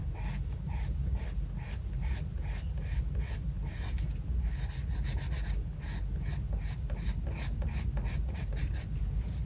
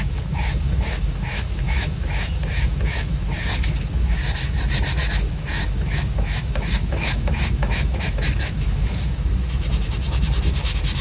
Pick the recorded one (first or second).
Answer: first